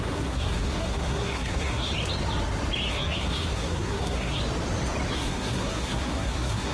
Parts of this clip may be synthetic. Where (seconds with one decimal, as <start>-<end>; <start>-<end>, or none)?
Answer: 0.0-1.9; 2.9-4.4; 5.1-6.7